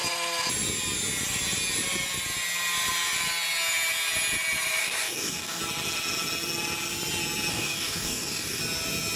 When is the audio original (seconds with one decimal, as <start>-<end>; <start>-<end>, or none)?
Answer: 0.0-4.8; 5.6-7.5; 8.6-9.2